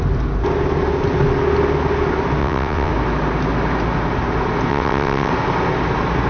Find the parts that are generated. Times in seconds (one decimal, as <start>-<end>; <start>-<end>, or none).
2.4-2.9; 4.7-5.3